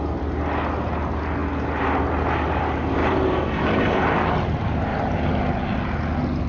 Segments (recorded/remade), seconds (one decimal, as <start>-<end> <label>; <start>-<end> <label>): 0.0-3.0 recorded; 3.0-4.3 remade; 4.3-4.9 recorded; 4.9-5.5 remade; 5.5-6.5 recorded